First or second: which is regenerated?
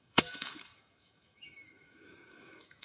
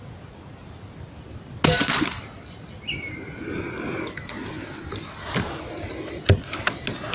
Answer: first